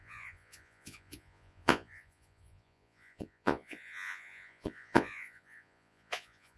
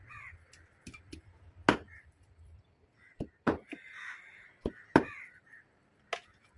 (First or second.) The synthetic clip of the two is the first